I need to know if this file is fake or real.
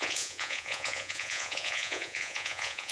fake